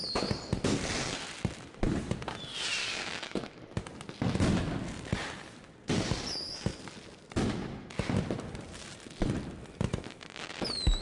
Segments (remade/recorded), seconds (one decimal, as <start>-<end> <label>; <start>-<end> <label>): 0.0-2.8 recorded; 2.8-3.8 remade; 3.8-11.0 recorded